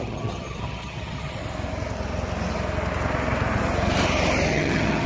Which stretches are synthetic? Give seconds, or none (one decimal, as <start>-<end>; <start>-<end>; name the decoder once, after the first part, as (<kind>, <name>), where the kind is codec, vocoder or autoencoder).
0.0-1.4 (vocoder, HiFi-GAN); 4.5-5.1